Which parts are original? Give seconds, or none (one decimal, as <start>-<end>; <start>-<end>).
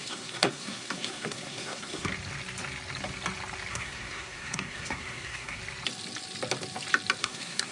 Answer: 2.1-3.7; 5.6-7.2